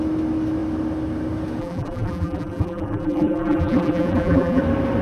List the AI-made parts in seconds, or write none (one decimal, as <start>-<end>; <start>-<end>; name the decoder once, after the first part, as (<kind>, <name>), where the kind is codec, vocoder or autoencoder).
1.6-4.6 (vocoder, BigVGAN v2)